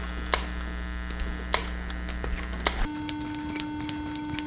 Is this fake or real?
real